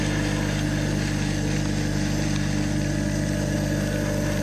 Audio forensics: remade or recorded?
recorded